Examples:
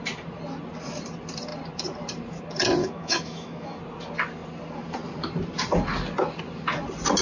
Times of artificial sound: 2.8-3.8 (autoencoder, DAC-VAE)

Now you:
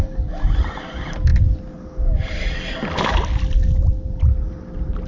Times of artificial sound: none

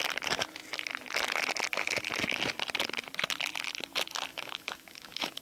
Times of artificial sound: 4.3-5.4 (autoencoder, DAC-VAE)

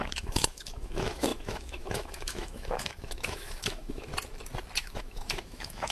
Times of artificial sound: 0.0-4.1 (autoencoder, DAC-VAE); 4.8-5.9